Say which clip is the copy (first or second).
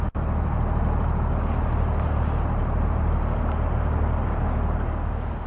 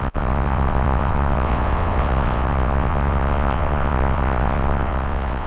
second